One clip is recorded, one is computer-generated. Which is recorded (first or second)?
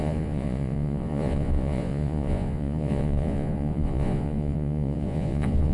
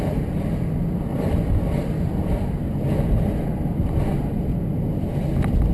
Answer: second